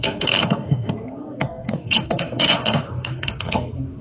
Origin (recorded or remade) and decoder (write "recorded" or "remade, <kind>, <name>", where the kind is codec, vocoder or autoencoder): remade, codec, SNAC